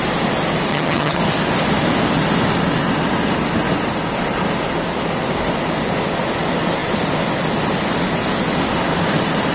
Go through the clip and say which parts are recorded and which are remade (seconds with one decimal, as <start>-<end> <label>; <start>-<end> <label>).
0.0-0.7 recorded; 0.7-1.2 remade; 1.2-9.5 recorded

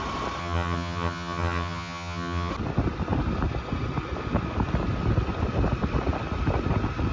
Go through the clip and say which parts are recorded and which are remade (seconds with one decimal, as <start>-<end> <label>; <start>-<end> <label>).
0.0-0.4 recorded; 0.4-2.5 remade; 2.5-7.1 recorded

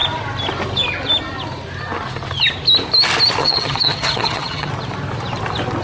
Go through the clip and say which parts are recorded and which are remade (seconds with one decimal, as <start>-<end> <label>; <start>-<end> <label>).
0.0-3.4 recorded; 3.4-4.7 remade; 4.7-5.8 recorded

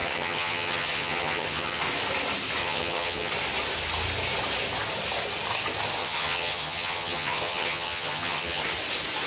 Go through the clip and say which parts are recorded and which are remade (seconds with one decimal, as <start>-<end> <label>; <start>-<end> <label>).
0.0-1.8 remade; 1.8-2.6 recorded; 2.6-3.3 remade; 3.3-6.0 recorded; 6.0-8.6 remade; 8.6-9.3 recorded

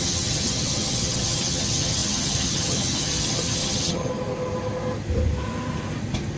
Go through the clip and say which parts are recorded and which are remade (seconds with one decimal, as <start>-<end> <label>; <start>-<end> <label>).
0.0-4.1 remade; 4.1-6.4 recorded

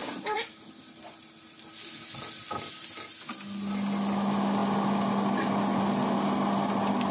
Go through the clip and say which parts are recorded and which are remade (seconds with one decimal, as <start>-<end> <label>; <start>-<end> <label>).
0.0-7.1 recorded